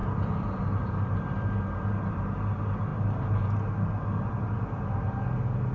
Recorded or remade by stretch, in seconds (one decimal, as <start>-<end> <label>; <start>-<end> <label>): 0.0-5.7 recorded